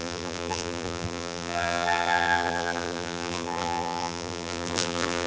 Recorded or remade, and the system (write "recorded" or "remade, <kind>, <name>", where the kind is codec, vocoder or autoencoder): remade, vocoder, BigVGAN v2